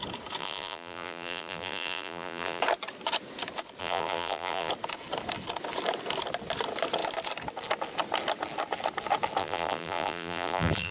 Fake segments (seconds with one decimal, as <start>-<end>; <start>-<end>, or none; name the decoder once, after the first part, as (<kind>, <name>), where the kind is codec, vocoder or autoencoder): 0.4-2.6 (vocoder, BigVGAN v2); 3.8-4.7; 9.4-10.9